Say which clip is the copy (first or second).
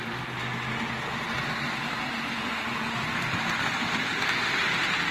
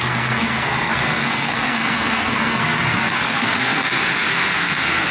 second